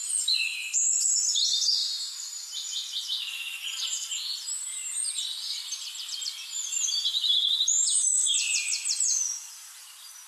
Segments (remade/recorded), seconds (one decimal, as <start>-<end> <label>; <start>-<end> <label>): 0.0-1.8 recorded; 1.8-3.0 remade; 3.0-4.3 recorded; 4.3-8.4 remade; 8.4-10.3 recorded